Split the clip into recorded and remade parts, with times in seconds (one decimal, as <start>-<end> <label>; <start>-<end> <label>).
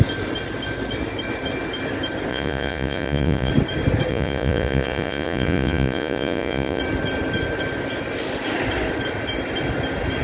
0.0-2.3 recorded; 2.3-3.5 remade; 3.5-4.1 recorded; 4.1-6.8 remade; 6.8-10.2 recorded